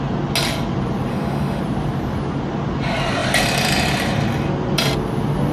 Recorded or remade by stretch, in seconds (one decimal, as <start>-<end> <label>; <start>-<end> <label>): 0.0-1.1 recorded; 1.1-1.6 remade; 1.6-5.5 recorded